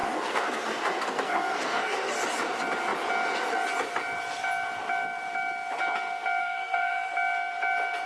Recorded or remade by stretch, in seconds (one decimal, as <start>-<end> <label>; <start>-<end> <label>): 0.0-2.1 remade; 2.1-6.4 recorded; 6.4-7.1 remade; 7.1-8.1 recorded